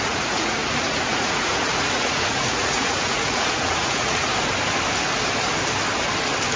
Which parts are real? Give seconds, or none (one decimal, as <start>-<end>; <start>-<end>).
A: 4.3-6.6